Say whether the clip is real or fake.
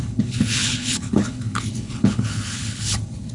fake